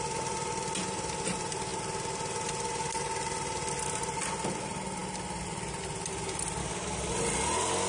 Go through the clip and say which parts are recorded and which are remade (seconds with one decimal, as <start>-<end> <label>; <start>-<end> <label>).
0.0-6.6 recorded; 6.6-7.1 remade; 7.1-7.9 recorded